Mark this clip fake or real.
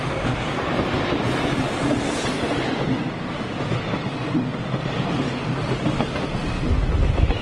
real